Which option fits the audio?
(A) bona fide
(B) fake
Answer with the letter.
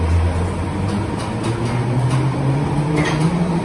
A